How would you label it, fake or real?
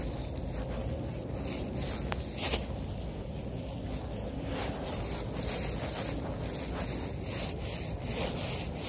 real